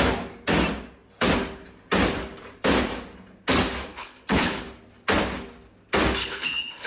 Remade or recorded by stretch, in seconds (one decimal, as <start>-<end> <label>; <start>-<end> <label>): 0.0-3.9 recorded; 3.9-4.6 remade; 4.6-6.2 recorded; 6.2-6.9 remade